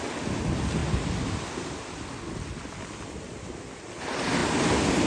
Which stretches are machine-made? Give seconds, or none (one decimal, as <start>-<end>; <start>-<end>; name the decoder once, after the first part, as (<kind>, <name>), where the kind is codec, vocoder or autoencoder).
none